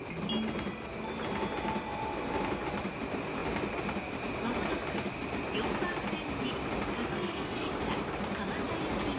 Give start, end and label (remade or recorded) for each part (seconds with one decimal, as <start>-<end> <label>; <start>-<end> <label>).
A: 0.0-7.1 recorded; 7.1-7.7 remade; 7.7-9.2 recorded